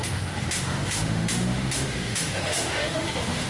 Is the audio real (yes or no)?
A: no